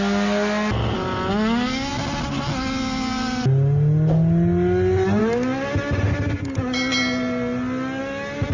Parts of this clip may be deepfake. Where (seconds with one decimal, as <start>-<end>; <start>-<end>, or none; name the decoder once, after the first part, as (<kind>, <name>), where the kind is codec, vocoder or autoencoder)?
none